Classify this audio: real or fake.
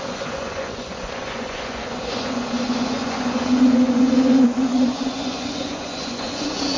fake